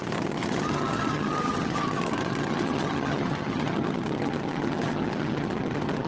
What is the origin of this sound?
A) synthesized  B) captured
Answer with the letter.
A